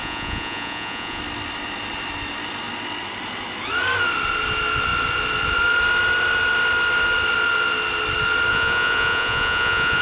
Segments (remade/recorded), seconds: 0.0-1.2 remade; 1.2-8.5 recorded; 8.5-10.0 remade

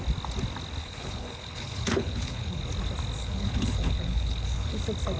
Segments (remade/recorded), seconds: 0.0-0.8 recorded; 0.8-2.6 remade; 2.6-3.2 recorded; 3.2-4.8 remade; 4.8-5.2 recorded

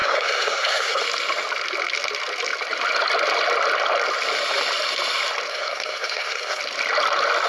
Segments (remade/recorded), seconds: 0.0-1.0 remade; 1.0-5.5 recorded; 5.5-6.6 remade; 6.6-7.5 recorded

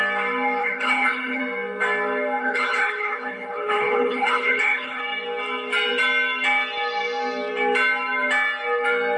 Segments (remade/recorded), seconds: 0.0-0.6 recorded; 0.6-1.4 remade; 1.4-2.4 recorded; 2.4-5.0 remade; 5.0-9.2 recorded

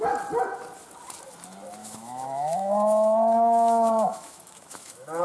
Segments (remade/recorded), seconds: 0.0-1.8 recorded; 1.8-5.2 remade

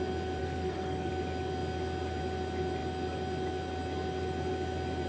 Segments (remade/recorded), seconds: 0.0-0.4 recorded; 0.4-1.1 remade; 1.1-5.1 recorded

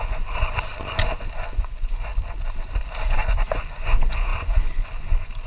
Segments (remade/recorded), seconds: 0.0-0.7 remade; 0.7-1.6 recorded; 1.6-2.1 remade; 2.1-3.0 recorded; 3.0-5.5 remade

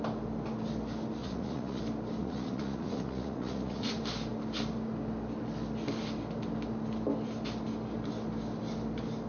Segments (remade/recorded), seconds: 0.0-1.2 recorded; 1.2-1.8 remade; 1.8-2.2 recorded; 2.2-3.9 remade; 3.9-9.3 recorded